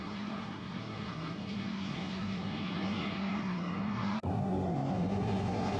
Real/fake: fake